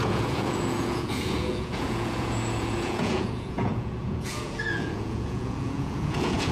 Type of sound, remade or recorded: remade